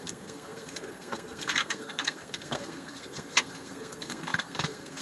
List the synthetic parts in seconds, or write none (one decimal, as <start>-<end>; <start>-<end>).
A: 0.0-5.0